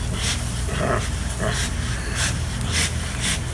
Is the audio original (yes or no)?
yes